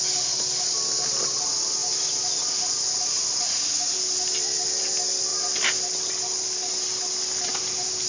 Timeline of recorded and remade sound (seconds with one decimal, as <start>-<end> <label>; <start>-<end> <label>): 0.0-1.8 recorded; 1.8-2.5 remade; 2.5-8.1 recorded